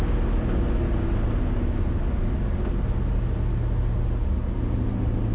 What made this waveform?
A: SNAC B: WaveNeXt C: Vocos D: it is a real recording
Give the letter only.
D